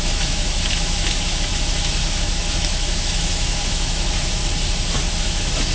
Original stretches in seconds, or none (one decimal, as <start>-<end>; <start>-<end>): 4.4-5.2